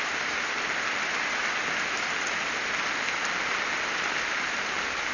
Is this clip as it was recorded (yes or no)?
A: yes